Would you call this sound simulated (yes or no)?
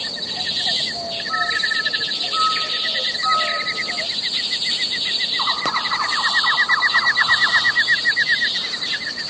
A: no